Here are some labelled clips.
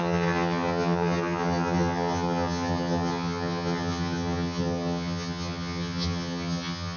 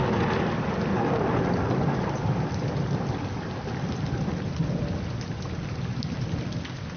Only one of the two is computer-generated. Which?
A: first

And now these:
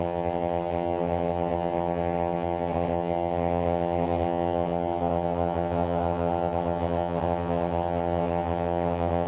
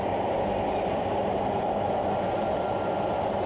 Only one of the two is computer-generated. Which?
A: first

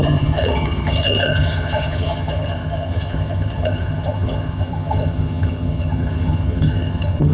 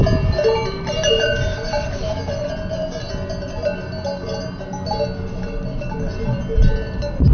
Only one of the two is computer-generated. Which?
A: first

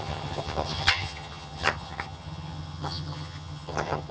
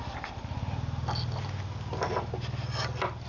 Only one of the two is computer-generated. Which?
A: first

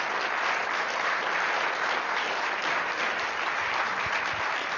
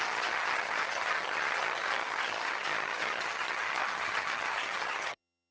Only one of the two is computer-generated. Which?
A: second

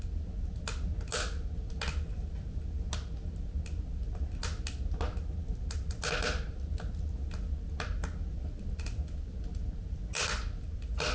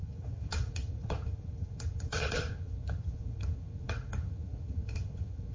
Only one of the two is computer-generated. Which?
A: second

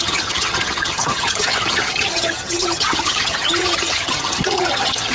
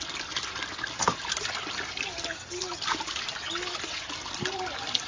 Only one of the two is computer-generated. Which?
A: first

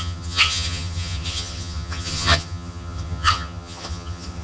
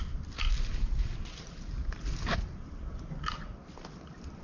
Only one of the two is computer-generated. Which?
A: first